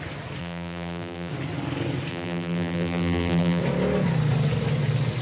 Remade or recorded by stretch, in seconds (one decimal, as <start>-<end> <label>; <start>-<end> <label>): 0.0-0.4 recorded; 0.4-1.3 remade; 1.3-2.1 recorded; 2.1-3.6 remade; 3.6-5.2 recorded